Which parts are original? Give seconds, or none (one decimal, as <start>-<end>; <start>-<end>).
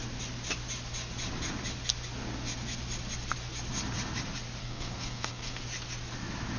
0.0-4.6; 5.6-6.6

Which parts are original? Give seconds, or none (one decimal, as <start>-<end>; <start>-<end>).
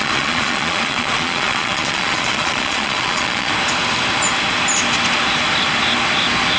3.5-6.6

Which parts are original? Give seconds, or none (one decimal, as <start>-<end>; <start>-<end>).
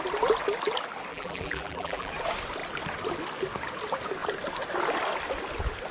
0.0-1.1; 2.1-5.9